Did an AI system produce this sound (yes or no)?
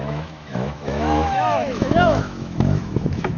yes